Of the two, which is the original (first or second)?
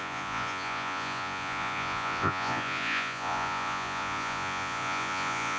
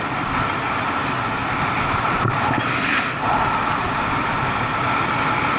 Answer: second